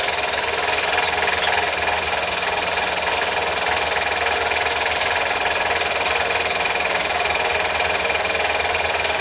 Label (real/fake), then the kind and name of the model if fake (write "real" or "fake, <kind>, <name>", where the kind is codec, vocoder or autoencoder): real